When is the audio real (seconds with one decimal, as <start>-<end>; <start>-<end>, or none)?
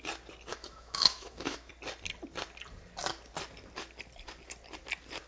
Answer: 0.0-0.5; 1.7-5.3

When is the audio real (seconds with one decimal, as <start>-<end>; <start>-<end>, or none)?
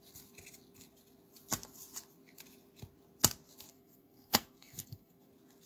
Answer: 0.0-3.7; 5.3-5.7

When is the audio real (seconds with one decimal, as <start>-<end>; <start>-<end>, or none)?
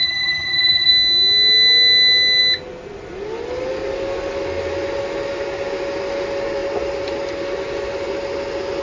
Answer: 0.9-8.8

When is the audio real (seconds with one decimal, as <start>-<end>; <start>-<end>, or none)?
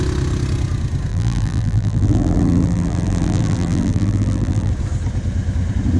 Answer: 0.0-1.1; 4.7-6.0